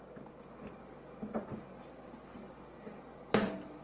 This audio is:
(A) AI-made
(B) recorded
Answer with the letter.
B